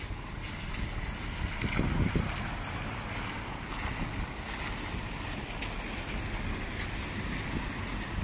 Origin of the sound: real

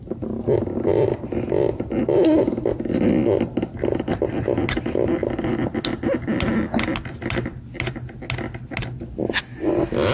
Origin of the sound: real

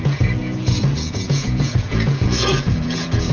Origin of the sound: fake